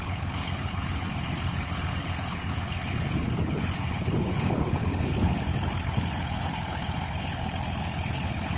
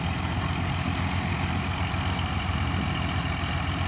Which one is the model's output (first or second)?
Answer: first